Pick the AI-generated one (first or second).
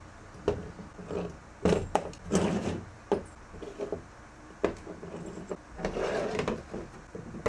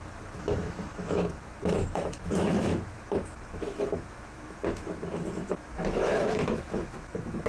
second